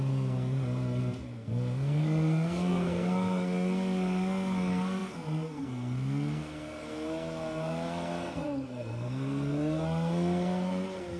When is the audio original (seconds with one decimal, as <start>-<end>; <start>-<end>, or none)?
none